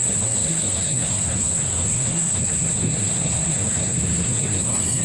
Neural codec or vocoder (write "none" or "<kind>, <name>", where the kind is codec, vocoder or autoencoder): codec, SNAC